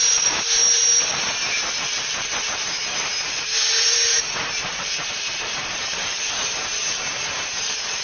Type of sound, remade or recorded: remade